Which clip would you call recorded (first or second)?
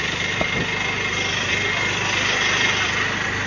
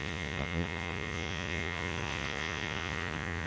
first